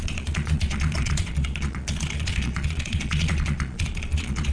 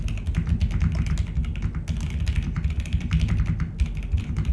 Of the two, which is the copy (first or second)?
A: first